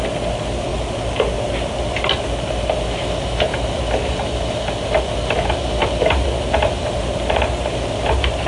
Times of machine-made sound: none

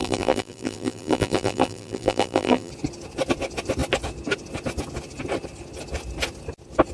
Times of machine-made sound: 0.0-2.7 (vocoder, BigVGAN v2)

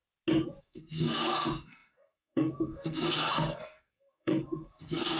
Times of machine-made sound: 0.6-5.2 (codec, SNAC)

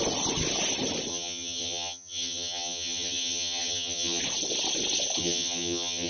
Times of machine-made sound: 1.1-4.2 (vocoder, HiFi-GAN); 5.2-6.1

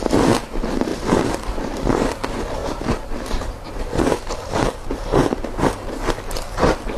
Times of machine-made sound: 0.9-1.8 (vocoder, BigVGAN v2); 2.6-5.3

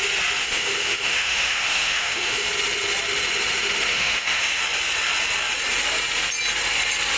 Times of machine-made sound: 0.4-2.5 (autoencoder, DAC-VAE); 3.9-4.6